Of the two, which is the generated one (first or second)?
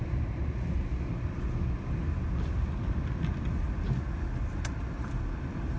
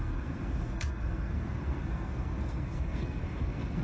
second